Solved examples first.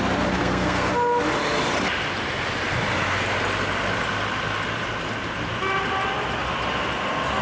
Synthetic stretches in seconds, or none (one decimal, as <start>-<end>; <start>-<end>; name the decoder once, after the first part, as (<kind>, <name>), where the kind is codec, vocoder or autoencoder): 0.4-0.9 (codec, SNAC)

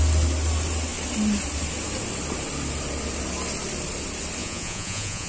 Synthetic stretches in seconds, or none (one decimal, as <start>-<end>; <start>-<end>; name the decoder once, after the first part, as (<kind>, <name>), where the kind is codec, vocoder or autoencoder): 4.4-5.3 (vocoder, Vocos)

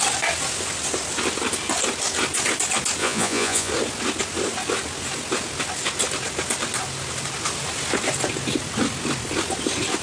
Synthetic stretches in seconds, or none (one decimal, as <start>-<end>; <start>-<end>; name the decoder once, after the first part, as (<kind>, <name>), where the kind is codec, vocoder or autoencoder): 3.0-3.7 (vocoder, Vocos)

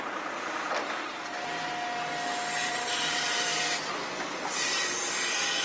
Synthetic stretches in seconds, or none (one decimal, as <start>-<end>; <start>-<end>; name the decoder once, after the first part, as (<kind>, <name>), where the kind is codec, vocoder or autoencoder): 1.1-1.7 (vocoder, BigVGAN v2); 2.6-3.9

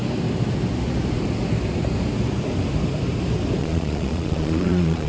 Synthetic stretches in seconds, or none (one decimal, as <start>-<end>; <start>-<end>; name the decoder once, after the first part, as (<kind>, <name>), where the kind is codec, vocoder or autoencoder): 3.6-5.1 (vocoder, Vocos)

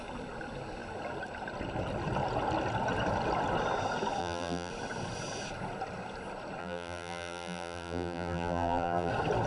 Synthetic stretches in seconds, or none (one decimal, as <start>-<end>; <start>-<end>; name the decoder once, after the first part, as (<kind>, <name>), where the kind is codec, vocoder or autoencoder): 4.2-4.7 (vocoder, BigVGAN v2); 6.6-9.1